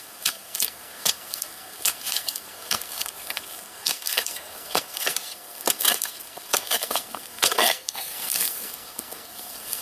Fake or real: fake